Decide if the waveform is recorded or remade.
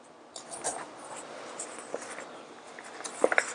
recorded